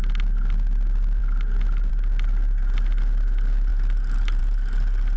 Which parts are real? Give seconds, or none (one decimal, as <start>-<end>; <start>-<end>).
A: 0.0-5.2